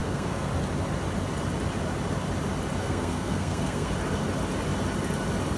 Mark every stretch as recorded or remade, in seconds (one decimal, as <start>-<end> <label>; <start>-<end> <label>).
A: 0.0-0.5 remade; 0.5-2.8 recorded; 2.8-3.9 remade; 3.9-5.6 recorded